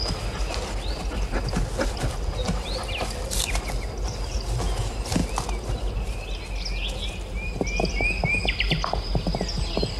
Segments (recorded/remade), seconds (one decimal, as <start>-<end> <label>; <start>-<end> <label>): 0.0-10.0 recorded